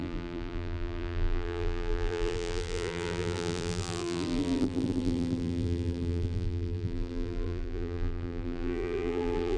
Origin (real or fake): fake